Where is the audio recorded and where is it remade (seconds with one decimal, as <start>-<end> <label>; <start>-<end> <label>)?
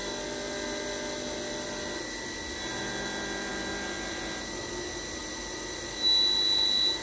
0.0-7.0 recorded